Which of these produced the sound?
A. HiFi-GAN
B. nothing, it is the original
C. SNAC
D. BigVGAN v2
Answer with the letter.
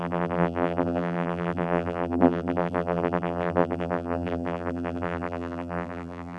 D